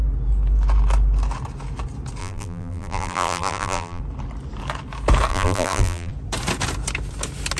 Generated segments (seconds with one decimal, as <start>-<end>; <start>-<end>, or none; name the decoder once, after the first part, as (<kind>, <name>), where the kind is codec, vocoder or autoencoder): 2.2-4.0 (vocoder, BigVGAN v2); 5.3-6.1